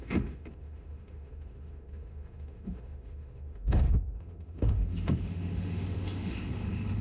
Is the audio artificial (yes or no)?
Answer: yes